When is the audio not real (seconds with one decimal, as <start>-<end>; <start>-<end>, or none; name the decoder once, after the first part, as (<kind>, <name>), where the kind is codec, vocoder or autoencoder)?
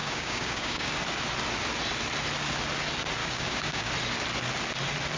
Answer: 0.0-0.9 (codec, DAC); 3.2-3.9